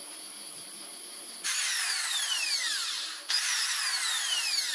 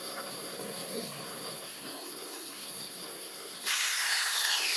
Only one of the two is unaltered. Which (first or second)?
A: first